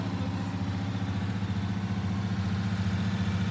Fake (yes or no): no